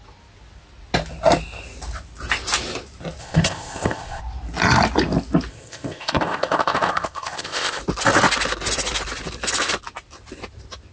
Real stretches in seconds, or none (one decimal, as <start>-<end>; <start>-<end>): 0.0-3.2; 4.2-5.5; 7.8-10.9